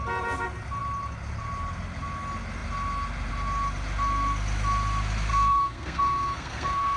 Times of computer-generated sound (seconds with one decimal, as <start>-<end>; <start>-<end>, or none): 5.3-7.0